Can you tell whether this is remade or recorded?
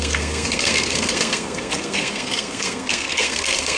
remade